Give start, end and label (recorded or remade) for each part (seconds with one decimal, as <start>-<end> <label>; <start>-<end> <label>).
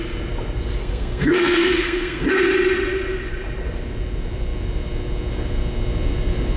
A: 0.0-0.8 recorded; 0.8-2.3 remade; 2.3-6.6 recorded